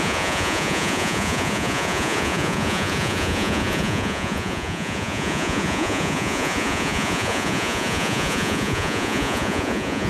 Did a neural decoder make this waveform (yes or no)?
yes